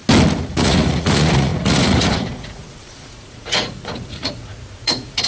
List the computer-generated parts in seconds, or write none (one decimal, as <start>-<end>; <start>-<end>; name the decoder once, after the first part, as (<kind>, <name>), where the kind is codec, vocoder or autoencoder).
0.5-5.3 (vocoder, Vocos)